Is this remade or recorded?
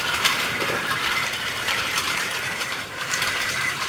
remade